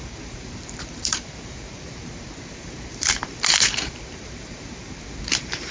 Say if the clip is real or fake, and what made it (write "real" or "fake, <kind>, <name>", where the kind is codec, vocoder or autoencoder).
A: fake, vocoder, BigVGAN v2